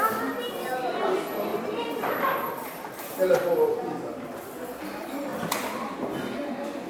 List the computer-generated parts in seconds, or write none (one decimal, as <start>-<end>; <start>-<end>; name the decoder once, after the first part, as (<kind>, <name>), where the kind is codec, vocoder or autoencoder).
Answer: 1.5-3.5 (vocoder, BigVGAN v2)